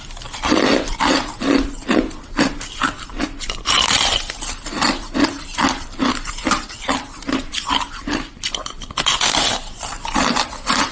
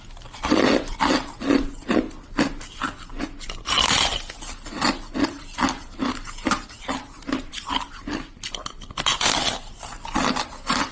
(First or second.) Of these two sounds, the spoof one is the first